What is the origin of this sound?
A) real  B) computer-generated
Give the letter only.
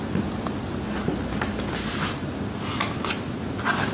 A